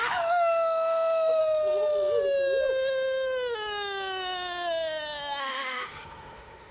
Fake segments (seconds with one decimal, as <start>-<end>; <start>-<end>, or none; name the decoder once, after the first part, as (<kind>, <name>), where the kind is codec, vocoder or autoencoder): 0.0-1.4 (autoencoder, DAC-VAE); 5.4-6.7

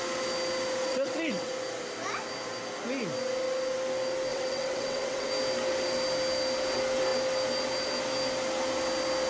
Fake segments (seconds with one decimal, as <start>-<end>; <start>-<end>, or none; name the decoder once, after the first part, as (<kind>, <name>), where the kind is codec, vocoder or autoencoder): 0.9-1.5 (vocoder, WaveNeXt); 4.3-5.3

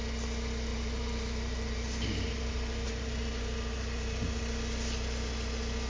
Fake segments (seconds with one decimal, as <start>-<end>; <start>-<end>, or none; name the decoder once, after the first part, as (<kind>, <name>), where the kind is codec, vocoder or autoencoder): 0.7-4.2 (vocoder, BigVGAN v2)

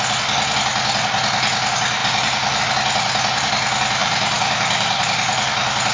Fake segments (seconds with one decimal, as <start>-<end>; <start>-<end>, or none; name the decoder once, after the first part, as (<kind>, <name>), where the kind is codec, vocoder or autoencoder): 2.0-2.6 (vocoder, BigVGAN v2); 4.0-5.0

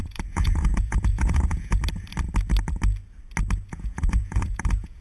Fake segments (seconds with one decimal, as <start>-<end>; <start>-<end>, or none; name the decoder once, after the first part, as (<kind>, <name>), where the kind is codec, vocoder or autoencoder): 0.0-1.8 (vocoder, Vocos); 3.7-5.0